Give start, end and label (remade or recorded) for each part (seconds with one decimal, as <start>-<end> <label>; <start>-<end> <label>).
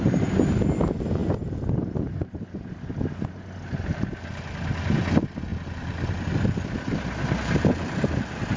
0.0-8.6 recorded